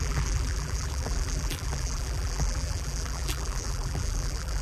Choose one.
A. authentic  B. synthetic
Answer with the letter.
B